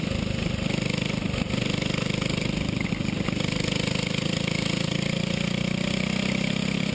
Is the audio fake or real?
real